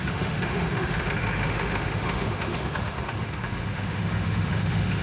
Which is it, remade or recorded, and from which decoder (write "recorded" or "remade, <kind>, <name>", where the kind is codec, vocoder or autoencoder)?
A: remade, autoencoder, DAC-VAE